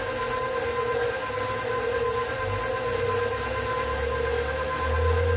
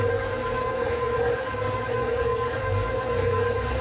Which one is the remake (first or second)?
second